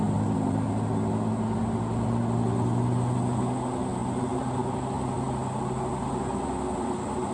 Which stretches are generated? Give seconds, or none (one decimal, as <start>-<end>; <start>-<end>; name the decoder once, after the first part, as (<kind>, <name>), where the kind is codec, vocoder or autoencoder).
none

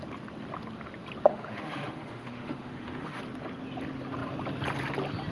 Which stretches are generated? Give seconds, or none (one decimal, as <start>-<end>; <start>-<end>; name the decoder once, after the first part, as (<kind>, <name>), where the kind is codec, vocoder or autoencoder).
1.3-3.2 (autoencoder, DAC-VAE)

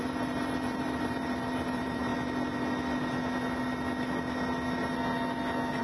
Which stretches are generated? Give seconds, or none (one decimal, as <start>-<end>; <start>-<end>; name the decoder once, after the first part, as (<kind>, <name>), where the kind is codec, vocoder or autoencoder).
0.0-2.1 (vocoder, BigVGAN v2)

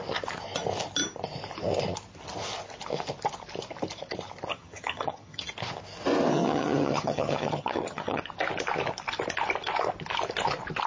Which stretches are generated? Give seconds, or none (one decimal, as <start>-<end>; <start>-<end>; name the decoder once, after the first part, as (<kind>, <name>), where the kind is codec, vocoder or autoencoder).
4.5-5.5 (vocoder, HiFi-GAN); 6.3-8.2

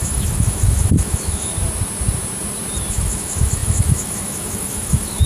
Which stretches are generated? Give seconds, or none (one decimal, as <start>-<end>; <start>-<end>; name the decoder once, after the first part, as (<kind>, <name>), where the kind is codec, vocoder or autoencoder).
0.0-1.5 (autoencoder, DAC-VAE); 2.9-5.3